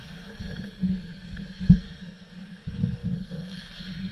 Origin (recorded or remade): remade